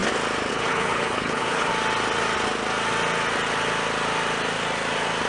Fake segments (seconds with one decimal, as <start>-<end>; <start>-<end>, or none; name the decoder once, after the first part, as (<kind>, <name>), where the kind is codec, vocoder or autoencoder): 0.5-1.7 (codec, HILCodec)